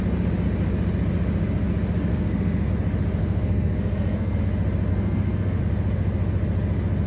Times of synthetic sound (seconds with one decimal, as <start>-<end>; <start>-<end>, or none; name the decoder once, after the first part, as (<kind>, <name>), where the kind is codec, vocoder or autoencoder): 2.1-2.7 (codec, SNAC); 3.2-4.4; 4.9-5.6